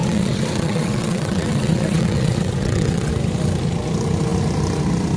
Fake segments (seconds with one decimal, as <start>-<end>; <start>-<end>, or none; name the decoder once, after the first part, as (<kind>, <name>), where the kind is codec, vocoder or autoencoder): 0.0-3.1 (vocoder, WaveNeXt)